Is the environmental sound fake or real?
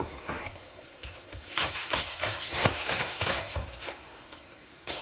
fake